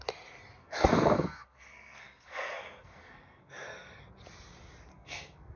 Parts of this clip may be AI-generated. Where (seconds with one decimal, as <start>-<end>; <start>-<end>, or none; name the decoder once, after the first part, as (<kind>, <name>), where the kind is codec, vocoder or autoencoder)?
0.6-4.0 (codec, SNAC); 4.9-5.6